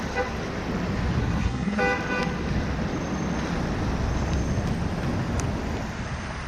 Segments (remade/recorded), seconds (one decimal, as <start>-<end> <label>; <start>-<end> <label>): 0.0-1.2 recorded; 1.2-1.8 remade; 1.8-6.5 recorded